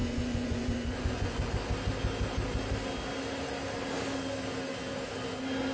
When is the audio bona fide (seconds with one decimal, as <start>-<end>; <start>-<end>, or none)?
1.5-5.7